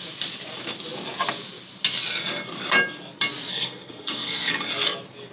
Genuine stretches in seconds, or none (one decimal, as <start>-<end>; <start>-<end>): 0.0-3.5; 4.5-5.3